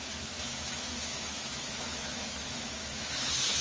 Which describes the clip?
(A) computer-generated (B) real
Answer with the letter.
A